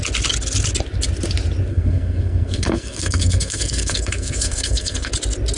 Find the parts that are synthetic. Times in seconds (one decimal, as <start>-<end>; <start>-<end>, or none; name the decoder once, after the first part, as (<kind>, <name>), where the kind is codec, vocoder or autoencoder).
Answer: 1.7-5.1 (codec, SNAC)